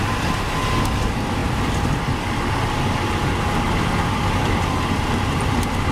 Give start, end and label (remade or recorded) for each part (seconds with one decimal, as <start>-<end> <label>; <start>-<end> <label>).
0.0-5.9 recorded